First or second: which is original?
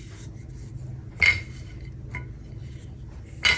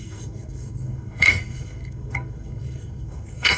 first